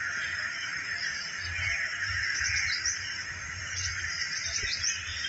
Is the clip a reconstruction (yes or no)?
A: yes